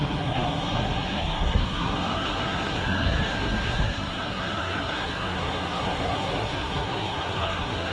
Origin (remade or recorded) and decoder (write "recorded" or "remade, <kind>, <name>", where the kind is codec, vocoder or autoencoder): remade, codec, SNAC